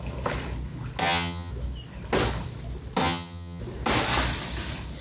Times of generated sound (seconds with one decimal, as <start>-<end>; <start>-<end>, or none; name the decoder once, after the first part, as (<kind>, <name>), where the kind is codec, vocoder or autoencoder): 1.0-1.5 (vocoder, HiFi-GAN); 3.0-3.6